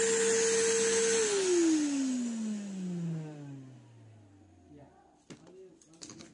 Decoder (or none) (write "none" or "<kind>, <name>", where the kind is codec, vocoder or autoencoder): none